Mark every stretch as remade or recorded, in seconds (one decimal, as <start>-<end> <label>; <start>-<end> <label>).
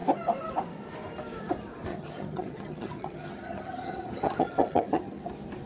0.0-1.9 recorded; 1.9-5.3 remade; 5.3-5.7 recorded